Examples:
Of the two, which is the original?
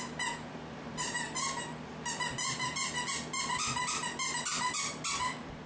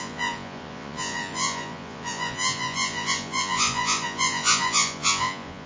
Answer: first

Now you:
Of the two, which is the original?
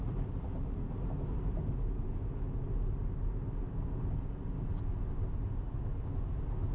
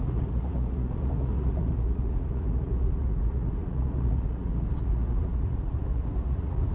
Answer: first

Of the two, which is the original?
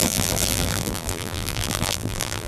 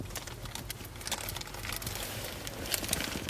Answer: second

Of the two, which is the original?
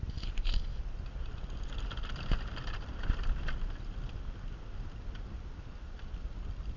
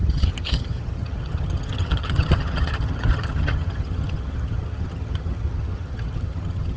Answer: first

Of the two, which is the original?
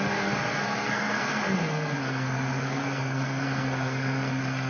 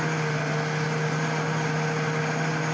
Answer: second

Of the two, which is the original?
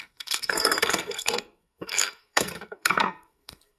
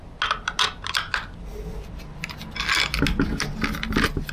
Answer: second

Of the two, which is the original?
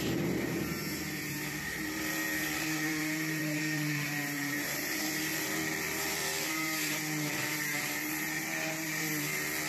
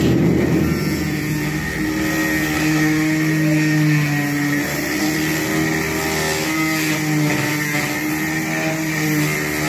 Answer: second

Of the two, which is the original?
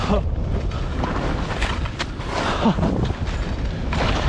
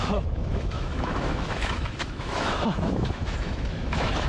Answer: first